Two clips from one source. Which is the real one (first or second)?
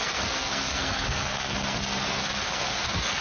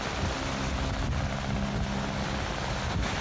second